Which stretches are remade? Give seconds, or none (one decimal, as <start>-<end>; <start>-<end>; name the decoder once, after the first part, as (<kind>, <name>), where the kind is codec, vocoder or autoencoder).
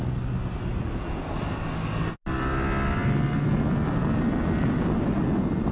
none